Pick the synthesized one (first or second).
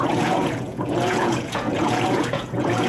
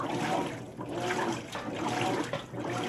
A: first